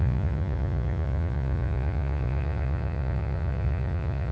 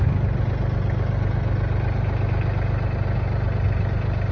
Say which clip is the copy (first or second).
first